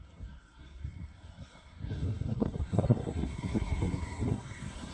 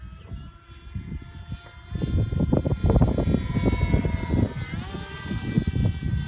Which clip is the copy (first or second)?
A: first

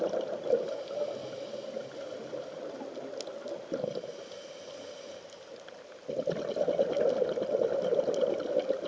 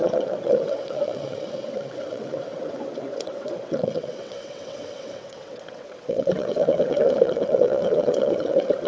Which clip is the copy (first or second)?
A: second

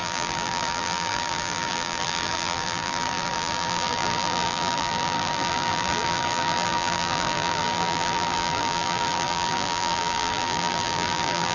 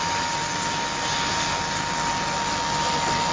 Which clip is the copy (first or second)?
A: first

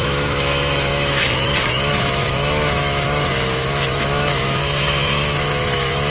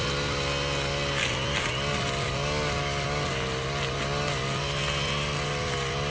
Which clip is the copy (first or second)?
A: first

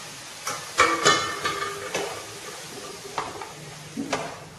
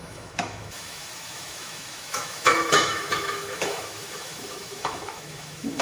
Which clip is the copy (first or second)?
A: second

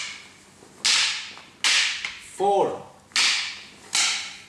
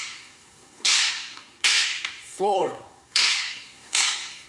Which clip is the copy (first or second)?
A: second